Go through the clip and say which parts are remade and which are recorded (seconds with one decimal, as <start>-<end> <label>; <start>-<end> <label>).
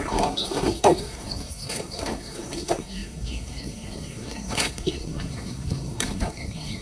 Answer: 0.0-6.8 remade